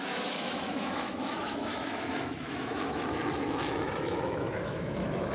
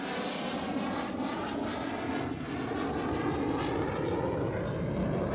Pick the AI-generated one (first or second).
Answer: first